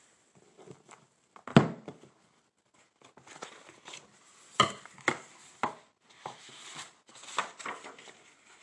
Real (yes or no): yes